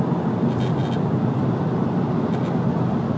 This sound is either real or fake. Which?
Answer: real